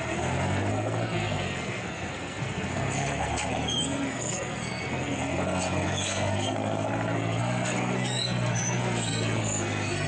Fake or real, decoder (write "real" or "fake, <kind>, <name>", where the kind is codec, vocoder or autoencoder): fake, codec, SNAC